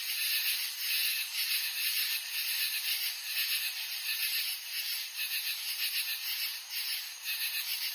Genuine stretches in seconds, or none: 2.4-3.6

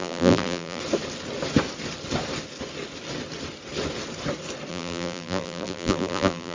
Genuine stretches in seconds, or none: 0.8-4.7

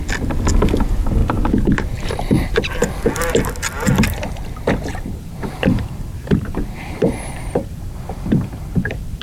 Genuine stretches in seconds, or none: 0.0-1.2; 2.3-4.9

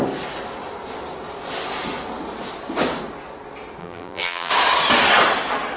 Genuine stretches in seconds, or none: 0.0-3.8; 4.5-5.8

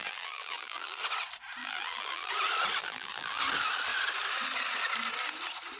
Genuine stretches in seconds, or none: 1.0-1.6; 2.3-2.8; 3.4-5.8

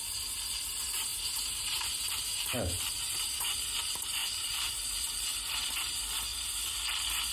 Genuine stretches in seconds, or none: 0.0-1.1; 3.3-4.2; 4.8-7.3

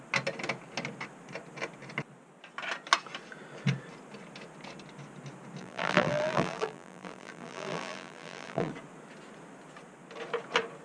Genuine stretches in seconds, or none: 0.0-5.6; 8.7-10.8

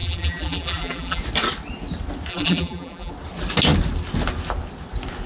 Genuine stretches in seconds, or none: 1.2-2.3; 3.1-5.3